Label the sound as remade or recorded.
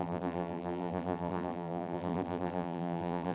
remade